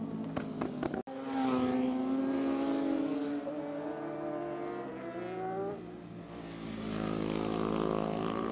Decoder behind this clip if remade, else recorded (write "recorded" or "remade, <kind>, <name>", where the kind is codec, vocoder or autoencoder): recorded